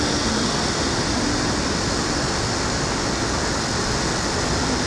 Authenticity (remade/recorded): recorded